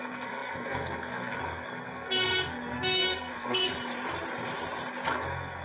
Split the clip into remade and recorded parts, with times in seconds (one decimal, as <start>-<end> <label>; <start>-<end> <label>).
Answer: 0.0-3.7 remade; 3.7-5.1 recorded; 5.1-5.6 remade